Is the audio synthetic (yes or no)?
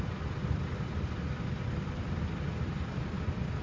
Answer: no